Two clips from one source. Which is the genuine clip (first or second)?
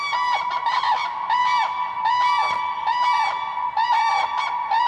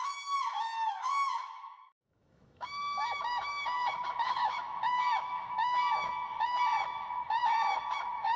first